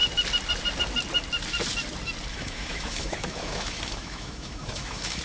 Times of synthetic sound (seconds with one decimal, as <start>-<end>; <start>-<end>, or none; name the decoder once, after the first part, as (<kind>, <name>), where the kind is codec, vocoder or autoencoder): 2.3-5.2 (autoencoder, DAC-VAE)